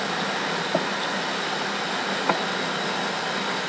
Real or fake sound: real